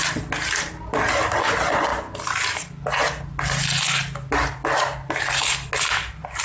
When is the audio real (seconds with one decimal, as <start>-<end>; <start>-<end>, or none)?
0.0-6.4